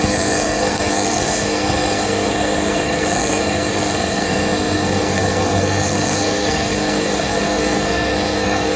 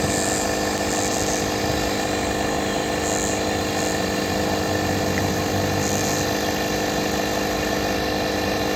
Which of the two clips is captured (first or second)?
second